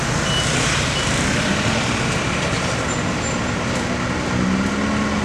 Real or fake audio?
real